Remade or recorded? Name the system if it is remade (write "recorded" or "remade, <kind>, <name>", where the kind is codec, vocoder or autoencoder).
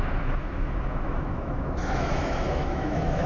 remade, autoencoder, DAC-VAE